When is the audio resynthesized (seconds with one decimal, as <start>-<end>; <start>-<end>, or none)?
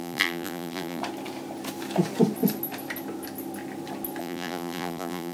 0.0-1.0; 4.2-5.3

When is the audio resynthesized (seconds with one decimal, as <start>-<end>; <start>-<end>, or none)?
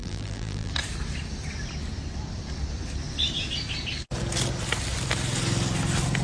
0.0-0.7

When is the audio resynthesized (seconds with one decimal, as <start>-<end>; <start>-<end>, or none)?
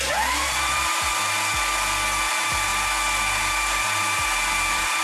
0.0-1.1; 2.3-2.7; 3.4-5.0